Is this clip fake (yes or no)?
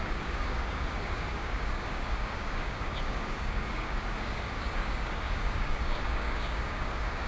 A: yes